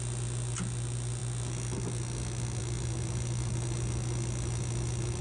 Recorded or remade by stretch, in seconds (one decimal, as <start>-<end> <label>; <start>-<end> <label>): 0.0-5.2 recorded

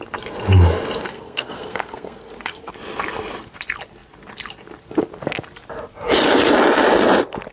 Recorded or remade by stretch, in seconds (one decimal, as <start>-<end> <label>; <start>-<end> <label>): 0.0-1.1 recorded; 1.1-2.7 remade; 2.7-7.5 recorded

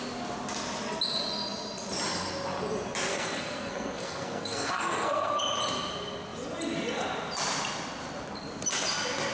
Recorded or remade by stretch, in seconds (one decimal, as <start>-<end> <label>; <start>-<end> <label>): 0.0-3.1 recorded; 3.1-5.4 remade; 5.4-9.3 recorded

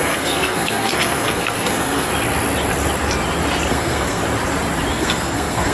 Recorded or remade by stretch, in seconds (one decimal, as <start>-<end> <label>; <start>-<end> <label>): 0.0-2.1 remade; 2.1-3.7 recorded; 3.7-4.2 remade; 4.2-4.9 recorded; 4.9-5.7 remade

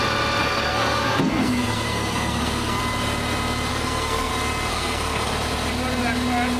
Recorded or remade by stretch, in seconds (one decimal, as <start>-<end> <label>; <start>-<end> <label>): 0.0-0.4 recorded; 0.4-2.8 remade; 2.8-3.7 recorded; 3.7-4.3 remade; 4.3-4.7 recorded; 4.7-5.3 remade; 5.3-6.6 recorded

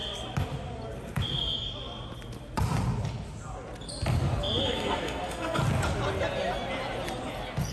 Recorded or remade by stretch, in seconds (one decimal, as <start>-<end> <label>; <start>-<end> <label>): 0.0-4.6 recorded; 4.6-5.6 remade; 5.6-7.7 recorded

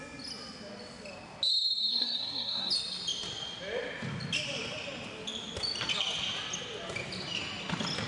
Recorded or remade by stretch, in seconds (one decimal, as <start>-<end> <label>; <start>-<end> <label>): 0.0-1.9 recorded; 1.9-2.7 remade; 2.7-8.1 recorded

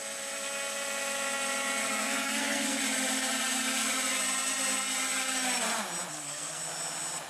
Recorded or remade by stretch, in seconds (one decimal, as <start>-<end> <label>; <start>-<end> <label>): 0.0-1.8 recorded; 1.8-2.8 remade; 2.8-6.1 recorded; 6.1-6.6 remade; 6.6-7.3 recorded